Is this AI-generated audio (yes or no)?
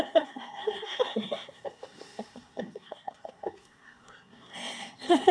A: yes